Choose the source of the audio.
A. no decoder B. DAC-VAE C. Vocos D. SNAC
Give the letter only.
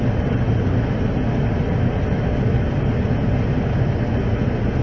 A